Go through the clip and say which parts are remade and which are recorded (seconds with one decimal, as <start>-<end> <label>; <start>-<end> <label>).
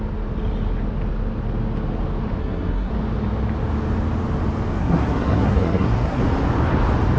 0.0-2.4 recorded; 2.4-2.9 remade; 2.9-4.8 recorded; 4.8-6.2 remade; 6.2-7.2 recorded